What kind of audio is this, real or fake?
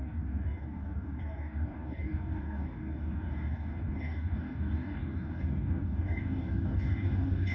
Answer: fake